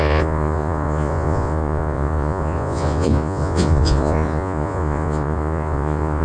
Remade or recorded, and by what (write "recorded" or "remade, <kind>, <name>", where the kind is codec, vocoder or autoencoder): remade, vocoder, Vocos